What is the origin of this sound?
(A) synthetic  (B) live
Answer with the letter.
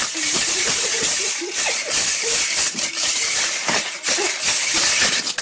B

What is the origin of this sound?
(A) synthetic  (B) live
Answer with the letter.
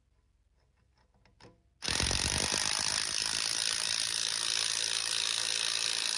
B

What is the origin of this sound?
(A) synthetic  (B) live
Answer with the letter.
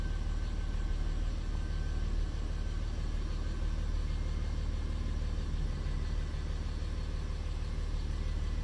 B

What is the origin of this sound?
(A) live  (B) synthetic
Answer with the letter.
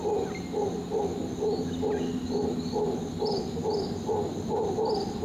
A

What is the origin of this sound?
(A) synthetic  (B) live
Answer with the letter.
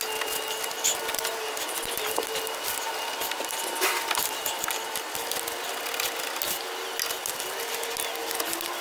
B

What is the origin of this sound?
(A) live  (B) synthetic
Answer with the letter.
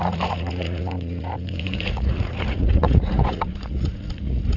B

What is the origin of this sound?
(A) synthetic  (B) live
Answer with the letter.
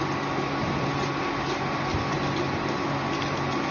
B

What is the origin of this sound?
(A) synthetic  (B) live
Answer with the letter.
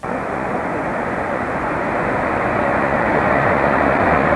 A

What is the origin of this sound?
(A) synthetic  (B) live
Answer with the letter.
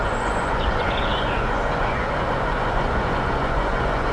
A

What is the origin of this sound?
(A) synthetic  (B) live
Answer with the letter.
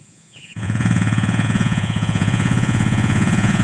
A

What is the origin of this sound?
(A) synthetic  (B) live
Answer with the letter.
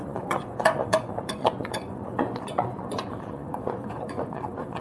A